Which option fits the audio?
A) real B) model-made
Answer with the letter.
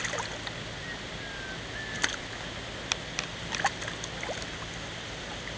A